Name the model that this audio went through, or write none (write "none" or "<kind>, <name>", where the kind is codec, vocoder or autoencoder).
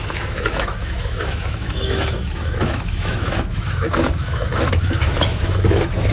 autoencoder, DAC-VAE